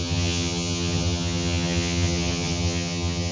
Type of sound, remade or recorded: remade